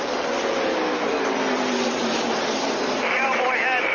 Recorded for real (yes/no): no